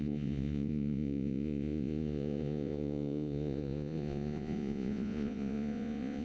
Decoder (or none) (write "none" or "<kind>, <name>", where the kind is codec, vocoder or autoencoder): vocoder, Vocos